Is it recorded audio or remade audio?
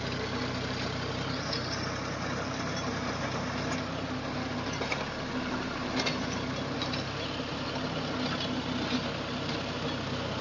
recorded